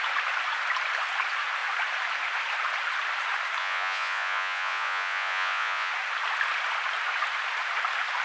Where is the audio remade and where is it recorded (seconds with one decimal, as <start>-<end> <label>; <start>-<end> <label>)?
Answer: 0.0-3.6 recorded; 3.6-5.9 remade; 5.9-8.2 recorded